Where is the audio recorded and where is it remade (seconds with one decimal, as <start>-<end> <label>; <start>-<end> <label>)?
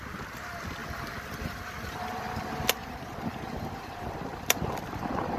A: 0.0-0.8 recorded; 0.8-2.2 remade; 2.2-2.8 recorded; 2.8-4.1 remade; 4.1-5.4 recorded